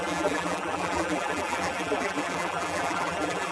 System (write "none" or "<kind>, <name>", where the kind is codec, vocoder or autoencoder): vocoder, BigVGAN v2